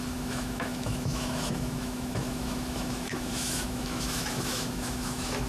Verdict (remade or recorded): remade